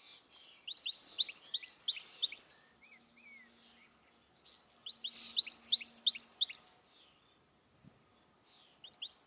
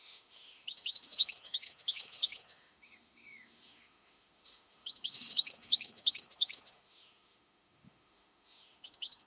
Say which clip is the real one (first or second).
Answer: first